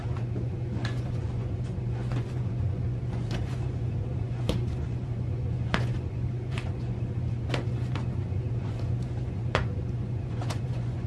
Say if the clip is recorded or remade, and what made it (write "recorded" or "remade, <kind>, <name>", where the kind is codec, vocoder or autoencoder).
remade, vocoder, Vocos